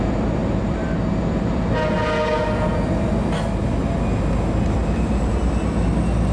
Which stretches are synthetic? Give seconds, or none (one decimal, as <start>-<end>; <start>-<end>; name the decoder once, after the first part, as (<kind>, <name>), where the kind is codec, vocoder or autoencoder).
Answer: 4.8-5.5 (vocoder, BigVGAN v2)